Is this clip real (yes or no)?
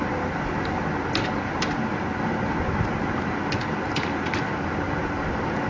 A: yes